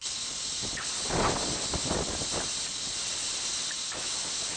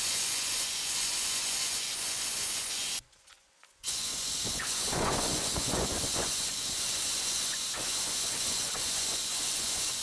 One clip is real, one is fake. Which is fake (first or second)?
second